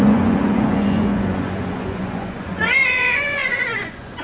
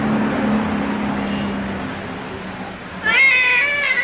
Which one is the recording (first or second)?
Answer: second